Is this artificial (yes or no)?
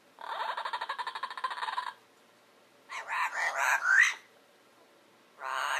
no